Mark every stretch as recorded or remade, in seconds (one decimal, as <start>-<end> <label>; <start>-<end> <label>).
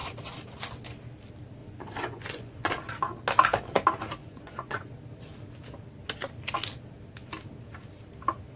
0.0-1.6 recorded; 1.6-2.7 remade; 2.7-4.2 recorded; 4.2-4.9 remade; 4.9-8.6 recorded